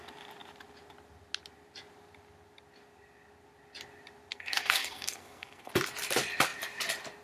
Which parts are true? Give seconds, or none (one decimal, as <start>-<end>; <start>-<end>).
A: 0.0-4.3; 5.7-7.2